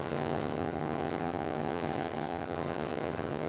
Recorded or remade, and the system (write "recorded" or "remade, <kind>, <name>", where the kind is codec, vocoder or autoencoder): remade, vocoder, HiFi-GAN